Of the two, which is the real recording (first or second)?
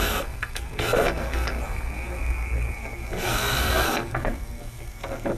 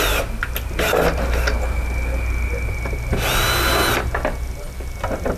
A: second